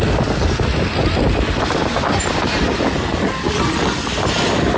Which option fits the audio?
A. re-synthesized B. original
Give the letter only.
B